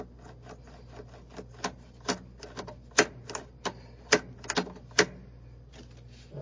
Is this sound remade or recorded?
recorded